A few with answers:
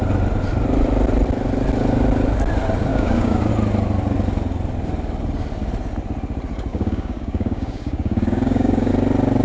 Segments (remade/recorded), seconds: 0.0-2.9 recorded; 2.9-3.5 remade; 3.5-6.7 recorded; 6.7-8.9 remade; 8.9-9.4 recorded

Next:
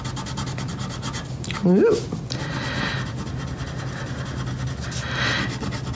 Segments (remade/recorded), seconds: 0.0-5.9 recorded

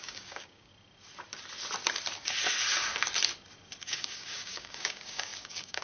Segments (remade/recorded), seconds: 0.0-0.7 remade; 0.7-3.8 recorded; 3.8-5.8 remade

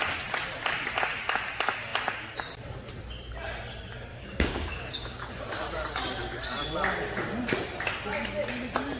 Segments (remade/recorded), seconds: 0.0-4.1 recorded; 4.1-5.3 remade; 5.3-9.0 recorded